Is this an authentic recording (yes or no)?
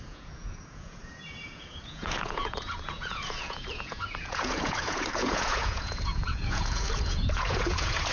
no